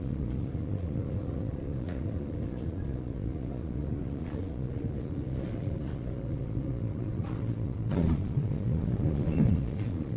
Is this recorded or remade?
remade